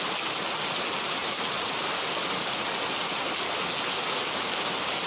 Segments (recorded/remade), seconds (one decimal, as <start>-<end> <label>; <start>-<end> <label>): 0.0-5.1 recorded